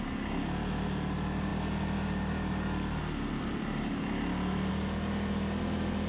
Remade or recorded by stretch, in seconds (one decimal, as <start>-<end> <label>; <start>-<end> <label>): 0.0-6.1 recorded